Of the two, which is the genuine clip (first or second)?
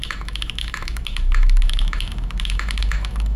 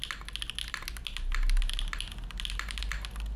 second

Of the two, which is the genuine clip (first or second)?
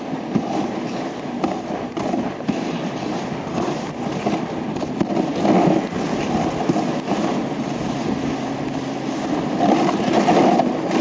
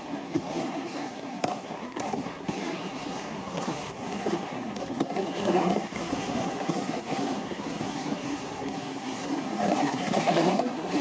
first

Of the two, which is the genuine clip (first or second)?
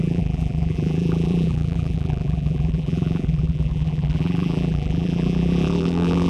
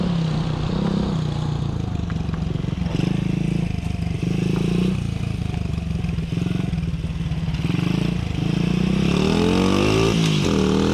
second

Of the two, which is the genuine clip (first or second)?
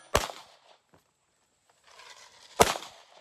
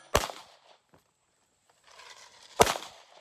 first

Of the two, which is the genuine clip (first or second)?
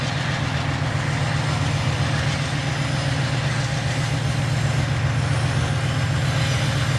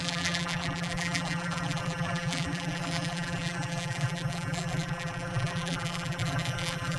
first